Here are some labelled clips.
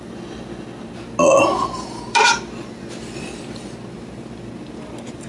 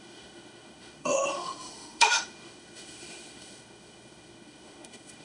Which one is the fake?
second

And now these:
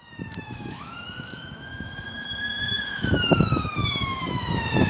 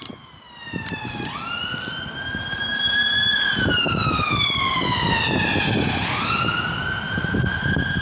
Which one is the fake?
first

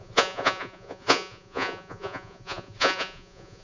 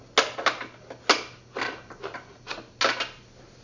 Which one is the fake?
first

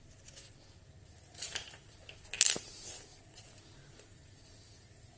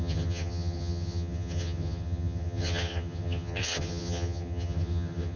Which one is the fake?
second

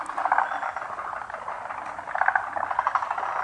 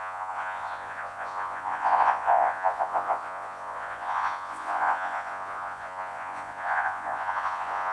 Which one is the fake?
second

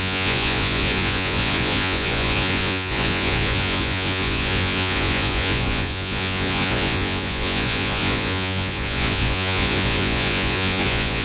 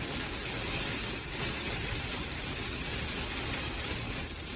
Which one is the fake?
first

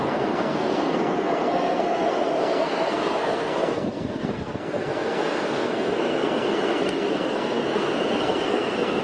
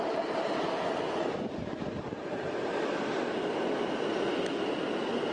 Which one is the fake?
first